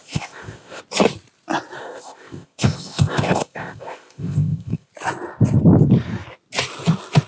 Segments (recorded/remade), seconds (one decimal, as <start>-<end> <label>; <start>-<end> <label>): 0.0-0.8 remade; 0.8-1.8 recorded; 1.8-4.9 remade; 4.9-7.3 recorded